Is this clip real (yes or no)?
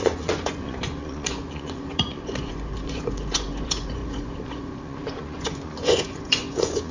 no